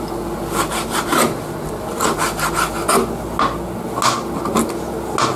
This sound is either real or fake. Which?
real